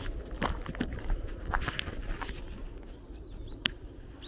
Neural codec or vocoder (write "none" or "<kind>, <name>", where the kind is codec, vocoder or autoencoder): none